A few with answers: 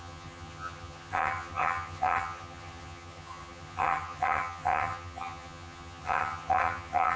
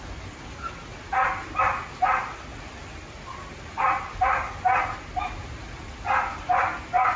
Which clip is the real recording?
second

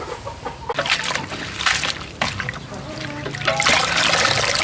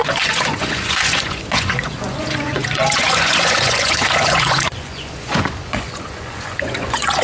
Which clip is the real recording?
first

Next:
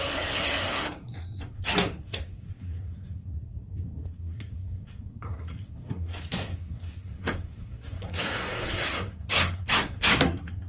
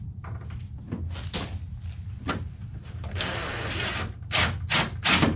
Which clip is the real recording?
second